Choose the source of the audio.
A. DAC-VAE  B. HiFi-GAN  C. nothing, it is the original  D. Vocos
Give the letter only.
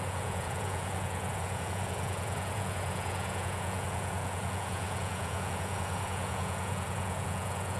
D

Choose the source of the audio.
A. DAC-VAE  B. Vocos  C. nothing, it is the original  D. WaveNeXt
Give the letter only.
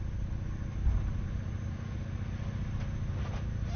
C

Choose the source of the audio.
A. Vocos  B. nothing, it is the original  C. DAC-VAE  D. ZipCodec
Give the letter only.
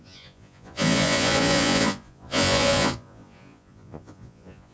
A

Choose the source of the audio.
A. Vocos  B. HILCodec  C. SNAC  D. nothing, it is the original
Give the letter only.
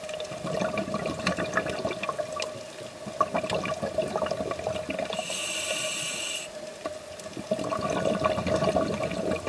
D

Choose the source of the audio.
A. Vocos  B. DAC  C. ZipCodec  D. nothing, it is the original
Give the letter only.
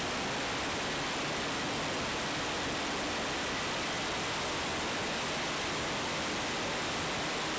D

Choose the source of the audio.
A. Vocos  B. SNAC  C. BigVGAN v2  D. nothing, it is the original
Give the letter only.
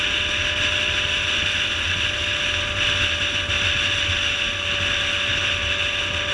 D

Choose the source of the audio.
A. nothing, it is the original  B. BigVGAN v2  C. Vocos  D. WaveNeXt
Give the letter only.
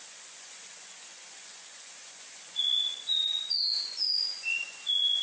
C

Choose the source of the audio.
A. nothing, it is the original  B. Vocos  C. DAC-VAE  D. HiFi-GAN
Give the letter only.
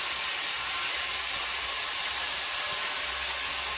A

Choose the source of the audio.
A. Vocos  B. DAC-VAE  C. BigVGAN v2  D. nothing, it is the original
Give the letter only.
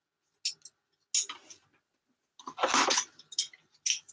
D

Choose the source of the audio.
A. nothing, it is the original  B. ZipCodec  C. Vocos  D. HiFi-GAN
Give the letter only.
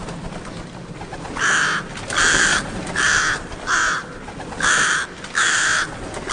A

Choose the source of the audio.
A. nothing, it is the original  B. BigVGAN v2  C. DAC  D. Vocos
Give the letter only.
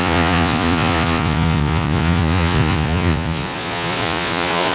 D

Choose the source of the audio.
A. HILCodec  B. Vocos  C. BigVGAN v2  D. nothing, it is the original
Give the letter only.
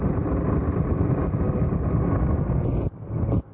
D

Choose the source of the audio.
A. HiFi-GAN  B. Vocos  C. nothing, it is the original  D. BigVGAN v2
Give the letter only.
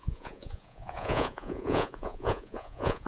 B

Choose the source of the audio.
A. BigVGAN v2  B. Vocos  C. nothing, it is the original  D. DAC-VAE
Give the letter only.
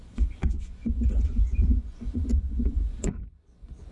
B